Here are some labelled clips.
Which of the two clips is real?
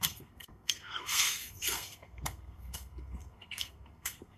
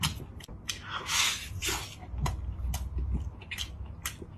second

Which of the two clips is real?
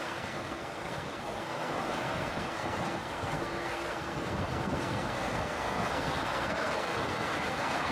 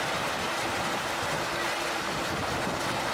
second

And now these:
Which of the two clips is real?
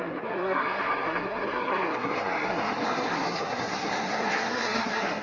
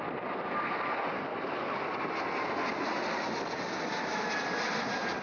second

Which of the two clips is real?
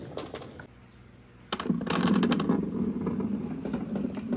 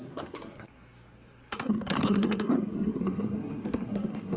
first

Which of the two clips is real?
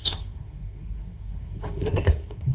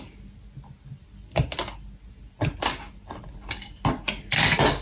second